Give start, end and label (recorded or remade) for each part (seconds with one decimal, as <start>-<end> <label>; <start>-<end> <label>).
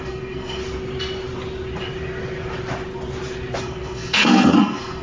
0.0-0.6 remade; 0.6-3.6 recorded; 3.6-5.0 remade